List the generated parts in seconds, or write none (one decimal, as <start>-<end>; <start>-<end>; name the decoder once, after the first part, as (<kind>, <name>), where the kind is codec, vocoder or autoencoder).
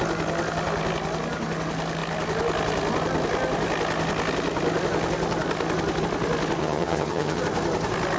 6.6-7.4 (vocoder, HiFi-GAN)